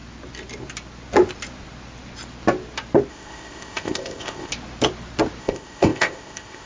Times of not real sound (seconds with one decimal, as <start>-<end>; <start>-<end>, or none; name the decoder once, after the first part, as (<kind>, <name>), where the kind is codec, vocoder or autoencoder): 3.1-4.5 (codec, ZipCodec); 5.4-6.7